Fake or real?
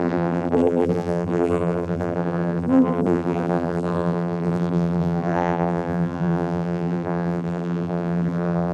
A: fake